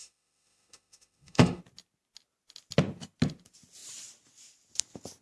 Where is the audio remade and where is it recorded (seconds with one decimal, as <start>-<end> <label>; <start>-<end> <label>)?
0.0-1.6 remade; 1.6-5.2 recorded